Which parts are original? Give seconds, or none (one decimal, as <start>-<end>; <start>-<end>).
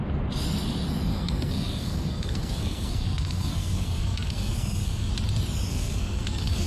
0.0-1.1; 5.1-5.7